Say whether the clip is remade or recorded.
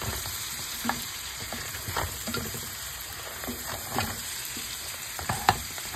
remade